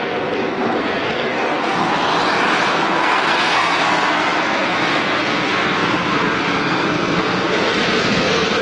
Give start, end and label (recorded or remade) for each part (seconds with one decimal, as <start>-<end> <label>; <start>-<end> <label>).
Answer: 0.0-2.1 remade; 2.1-2.7 recorded; 2.7-8.6 remade